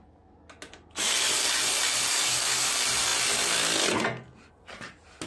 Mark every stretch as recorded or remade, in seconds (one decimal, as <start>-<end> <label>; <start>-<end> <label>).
0.0-2.1 recorded; 2.1-2.7 remade; 2.7-5.3 recorded